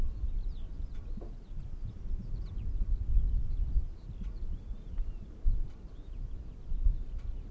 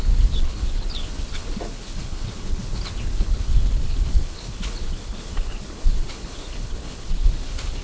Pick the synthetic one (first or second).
second